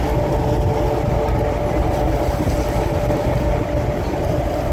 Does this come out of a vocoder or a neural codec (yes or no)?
no